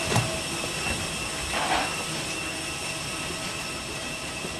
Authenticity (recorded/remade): remade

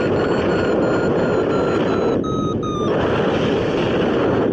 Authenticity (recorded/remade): recorded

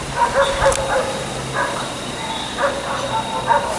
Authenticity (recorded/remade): recorded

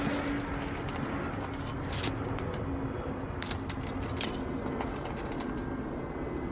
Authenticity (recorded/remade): recorded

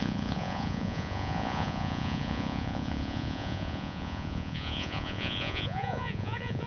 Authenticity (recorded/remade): remade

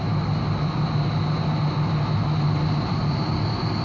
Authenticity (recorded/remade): recorded